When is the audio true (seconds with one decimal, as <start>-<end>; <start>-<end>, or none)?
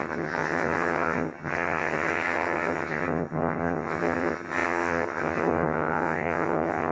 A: none